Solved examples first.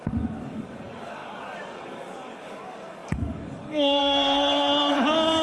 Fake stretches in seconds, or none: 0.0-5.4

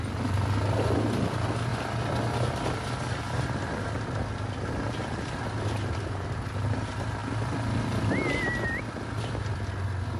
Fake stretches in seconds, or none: 7.2-8.1

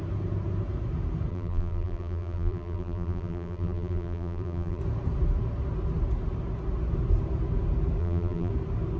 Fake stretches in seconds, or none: 1.3-4.8; 8.0-8.5

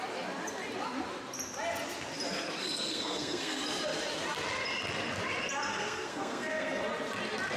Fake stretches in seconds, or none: 2.6-3.6; 5.7-6.8